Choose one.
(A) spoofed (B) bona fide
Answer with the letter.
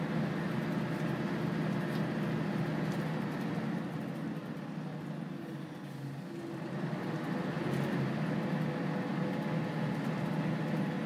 B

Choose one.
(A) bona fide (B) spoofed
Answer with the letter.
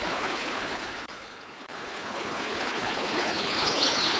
B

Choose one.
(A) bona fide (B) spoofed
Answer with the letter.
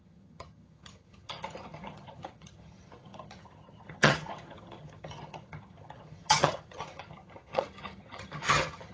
B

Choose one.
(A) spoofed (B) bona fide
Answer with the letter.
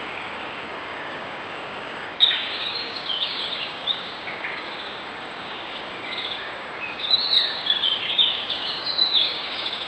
A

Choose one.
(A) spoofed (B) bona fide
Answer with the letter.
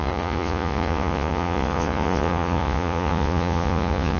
A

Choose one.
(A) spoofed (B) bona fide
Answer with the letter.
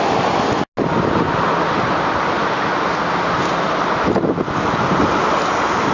B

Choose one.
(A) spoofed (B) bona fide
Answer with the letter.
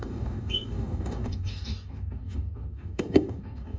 A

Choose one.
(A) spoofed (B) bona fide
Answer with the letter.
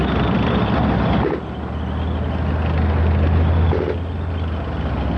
B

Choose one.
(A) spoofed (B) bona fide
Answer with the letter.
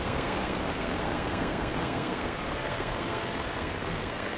A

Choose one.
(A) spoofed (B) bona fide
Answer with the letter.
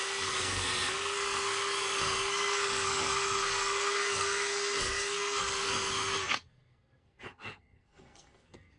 A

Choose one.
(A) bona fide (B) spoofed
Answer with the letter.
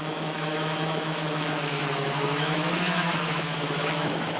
B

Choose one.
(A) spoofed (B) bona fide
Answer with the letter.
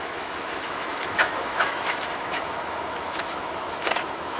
A